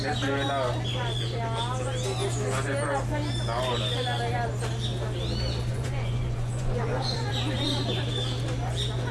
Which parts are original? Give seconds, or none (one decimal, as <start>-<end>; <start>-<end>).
0.0-5.7; 7.3-9.1